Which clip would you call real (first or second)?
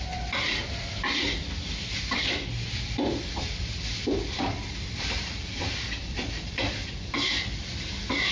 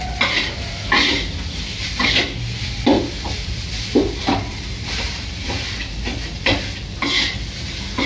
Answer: second